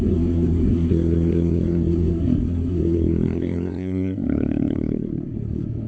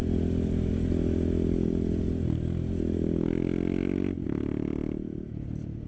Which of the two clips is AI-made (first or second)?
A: first